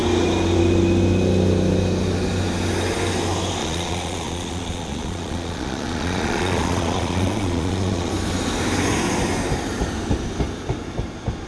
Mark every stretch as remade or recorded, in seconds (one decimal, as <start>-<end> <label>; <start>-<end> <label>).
0.0-3.6 recorded; 3.6-8.1 remade; 8.1-11.5 recorded